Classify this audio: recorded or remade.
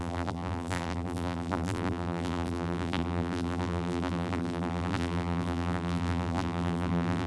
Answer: remade